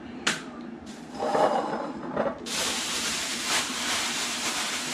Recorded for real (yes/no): no